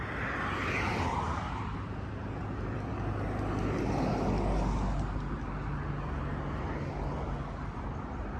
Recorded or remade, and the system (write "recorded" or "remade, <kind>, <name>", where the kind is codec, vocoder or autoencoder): recorded